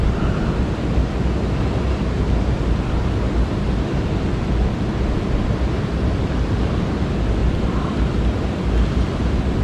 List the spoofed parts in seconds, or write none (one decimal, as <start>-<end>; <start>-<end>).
none